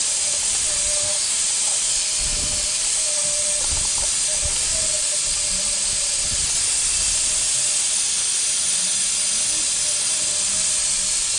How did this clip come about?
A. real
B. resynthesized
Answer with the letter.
A